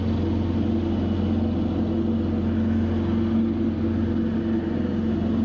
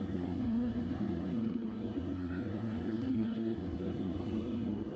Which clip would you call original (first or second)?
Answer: first